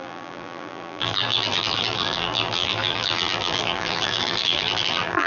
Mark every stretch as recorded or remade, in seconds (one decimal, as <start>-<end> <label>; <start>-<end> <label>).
0.0-5.3 remade